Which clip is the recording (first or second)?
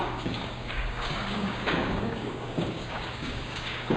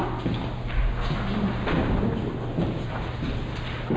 second